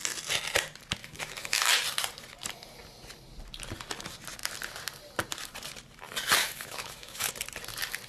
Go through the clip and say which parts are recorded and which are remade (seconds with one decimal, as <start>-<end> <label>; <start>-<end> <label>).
0.0-1.0 recorded; 1.0-1.8 remade; 1.8-6.4 recorded; 6.4-7.3 remade; 7.3-8.1 recorded